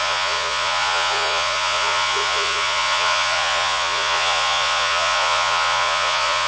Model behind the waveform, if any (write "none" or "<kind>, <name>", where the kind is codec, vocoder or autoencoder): vocoder, Vocos